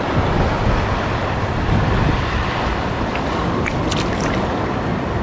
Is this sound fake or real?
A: real